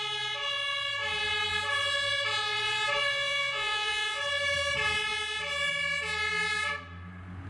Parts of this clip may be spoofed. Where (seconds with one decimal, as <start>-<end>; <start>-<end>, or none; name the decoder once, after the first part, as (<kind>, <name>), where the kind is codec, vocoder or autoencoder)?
3.1-4.2 (vocoder, Vocos)